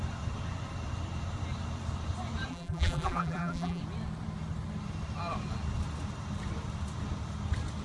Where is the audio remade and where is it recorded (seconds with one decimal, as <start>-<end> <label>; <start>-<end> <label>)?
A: 0.0-2.5 recorded; 2.5-3.8 remade; 3.8-7.8 recorded